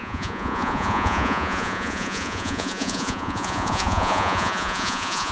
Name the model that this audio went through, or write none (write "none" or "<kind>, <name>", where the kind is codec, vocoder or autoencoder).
vocoder, Vocos